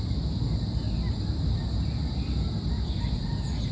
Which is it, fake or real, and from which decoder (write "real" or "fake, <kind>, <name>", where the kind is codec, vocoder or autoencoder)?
real